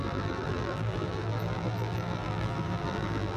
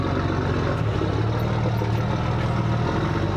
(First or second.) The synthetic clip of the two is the first